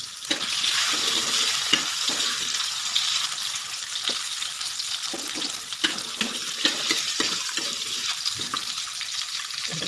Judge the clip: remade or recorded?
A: remade